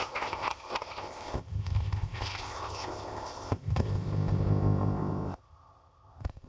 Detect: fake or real fake